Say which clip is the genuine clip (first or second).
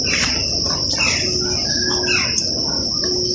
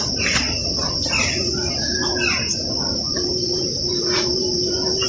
first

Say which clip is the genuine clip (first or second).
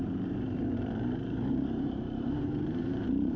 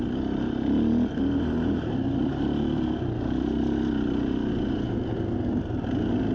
second